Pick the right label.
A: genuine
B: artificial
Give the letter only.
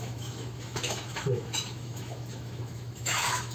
B